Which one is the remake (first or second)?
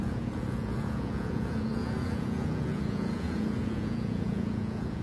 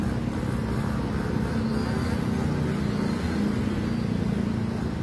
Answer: first